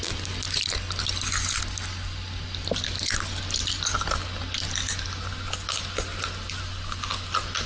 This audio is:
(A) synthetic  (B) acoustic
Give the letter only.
B